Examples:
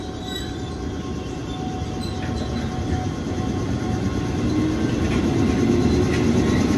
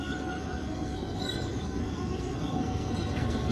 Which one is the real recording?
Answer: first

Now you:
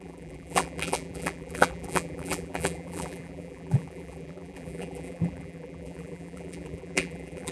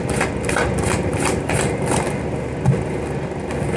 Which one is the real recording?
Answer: second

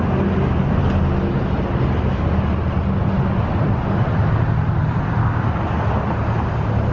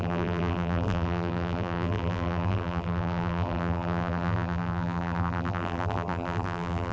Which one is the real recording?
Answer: first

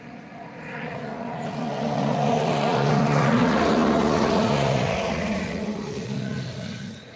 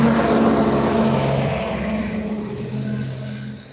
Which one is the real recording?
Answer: second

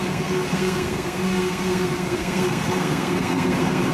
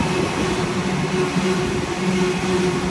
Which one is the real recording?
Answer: second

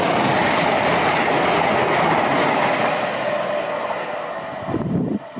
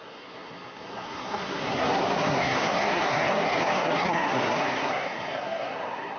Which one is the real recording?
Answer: first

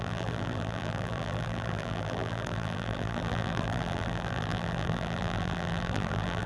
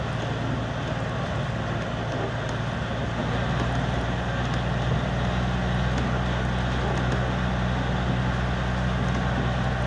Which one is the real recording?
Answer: second